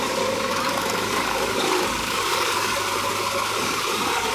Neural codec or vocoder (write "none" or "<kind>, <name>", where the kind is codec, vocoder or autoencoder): codec, DAC